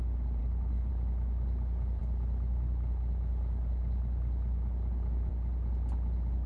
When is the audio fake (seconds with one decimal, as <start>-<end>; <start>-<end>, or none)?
0.4-0.9